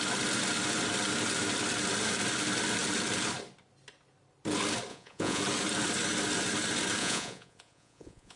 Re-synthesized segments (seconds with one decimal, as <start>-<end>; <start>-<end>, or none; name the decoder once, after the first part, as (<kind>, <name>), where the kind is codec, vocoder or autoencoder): 4.9-5.4 (vocoder, Vocos); 7.0-8.4